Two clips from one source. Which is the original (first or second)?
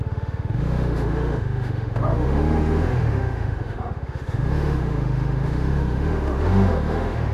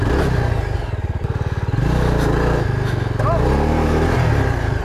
second